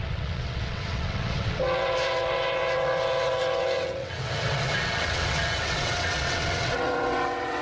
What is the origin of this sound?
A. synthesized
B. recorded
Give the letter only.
A